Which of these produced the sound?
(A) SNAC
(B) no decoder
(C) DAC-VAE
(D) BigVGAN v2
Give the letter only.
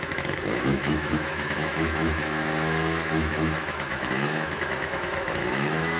C